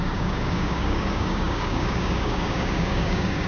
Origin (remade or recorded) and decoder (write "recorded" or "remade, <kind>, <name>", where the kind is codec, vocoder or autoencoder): remade, codec, DAC